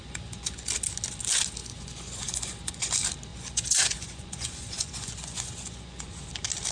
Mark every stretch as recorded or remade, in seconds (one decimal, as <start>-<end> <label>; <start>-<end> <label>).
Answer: 0.0-0.7 remade; 0.7-1.6 recorded; 1.6-2.9 remade; 2.9-3.3 recorded; 3.3-6.3 remade; 6.3-6.7 recorded